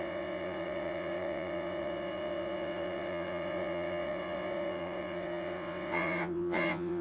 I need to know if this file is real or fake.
fake